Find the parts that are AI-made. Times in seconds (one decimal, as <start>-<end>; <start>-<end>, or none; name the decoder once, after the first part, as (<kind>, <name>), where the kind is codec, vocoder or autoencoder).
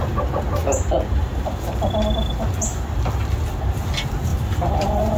none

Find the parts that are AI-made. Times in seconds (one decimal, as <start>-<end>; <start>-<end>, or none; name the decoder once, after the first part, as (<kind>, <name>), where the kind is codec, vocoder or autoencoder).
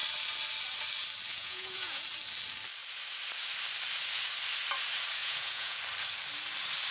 1.3-2.0 (vocoder, Vocos); 5.2-5.8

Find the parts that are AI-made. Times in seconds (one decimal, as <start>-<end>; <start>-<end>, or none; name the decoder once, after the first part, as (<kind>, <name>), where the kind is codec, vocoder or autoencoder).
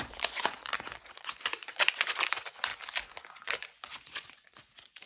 0.0-2.7 (vocoder, Vocos); 3.3-5.1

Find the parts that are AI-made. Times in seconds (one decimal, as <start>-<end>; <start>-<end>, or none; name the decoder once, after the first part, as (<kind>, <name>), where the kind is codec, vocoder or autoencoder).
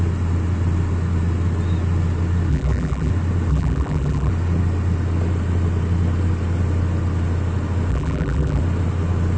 2.5-3.1 (vocoder, BigVGAN v2); 3.5-4.3; 7.9-8.6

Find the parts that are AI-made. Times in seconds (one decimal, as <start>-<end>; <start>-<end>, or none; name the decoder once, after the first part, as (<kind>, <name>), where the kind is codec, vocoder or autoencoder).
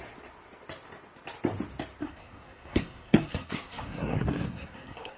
2.0-5.2 (codec, SNAC)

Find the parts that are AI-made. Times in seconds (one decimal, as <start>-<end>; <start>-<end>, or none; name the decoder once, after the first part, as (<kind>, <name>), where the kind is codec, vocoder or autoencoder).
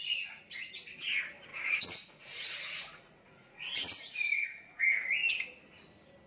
1.5-4.8 (vocoder, Vocos)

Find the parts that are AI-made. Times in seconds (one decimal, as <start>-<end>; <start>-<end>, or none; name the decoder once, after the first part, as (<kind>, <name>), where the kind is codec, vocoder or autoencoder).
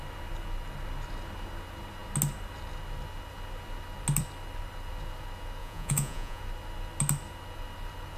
5.6-6.4 (vocoder, Vocos)